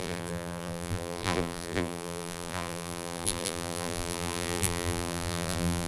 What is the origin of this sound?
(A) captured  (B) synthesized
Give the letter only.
B